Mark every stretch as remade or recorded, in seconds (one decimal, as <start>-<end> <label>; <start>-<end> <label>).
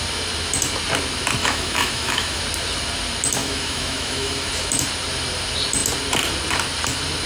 0.0-1.4 recorded; 1.4-2.4 remade; 2.4-3.4 recorded; 3.4-4.5 remade; 4.5-7.3 recorded